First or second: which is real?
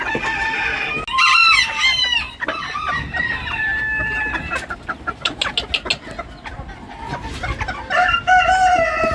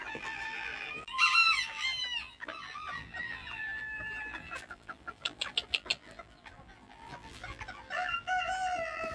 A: first